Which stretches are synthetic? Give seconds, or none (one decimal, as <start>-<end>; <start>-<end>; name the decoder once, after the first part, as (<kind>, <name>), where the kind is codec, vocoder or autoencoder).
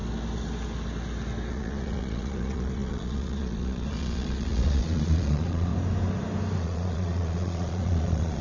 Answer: 1.5-5.7 (vocoder, Vocos); 6.6-8.4